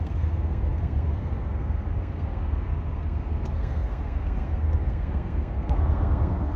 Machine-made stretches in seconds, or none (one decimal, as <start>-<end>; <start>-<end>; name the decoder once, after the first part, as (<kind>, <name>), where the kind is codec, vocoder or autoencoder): 0.0-6.6 (codec, SNAC)